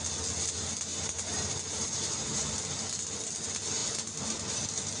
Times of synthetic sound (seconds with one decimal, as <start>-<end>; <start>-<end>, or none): 0.9-2.5

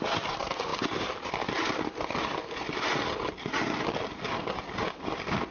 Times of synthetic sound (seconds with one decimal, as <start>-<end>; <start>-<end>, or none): 0.7-1.3

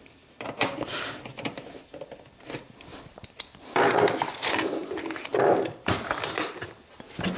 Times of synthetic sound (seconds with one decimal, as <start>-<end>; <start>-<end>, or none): 2.9-3.9; 5.3-6.5

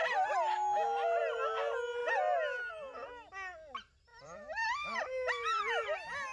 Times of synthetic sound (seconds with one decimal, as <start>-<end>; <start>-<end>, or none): 4.1-5.6

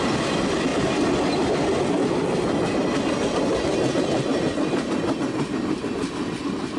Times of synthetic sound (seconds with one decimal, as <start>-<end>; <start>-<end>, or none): 0.7-3.1